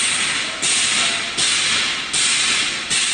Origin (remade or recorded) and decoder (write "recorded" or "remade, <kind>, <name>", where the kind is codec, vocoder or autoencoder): recorded